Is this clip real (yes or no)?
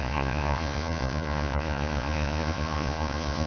no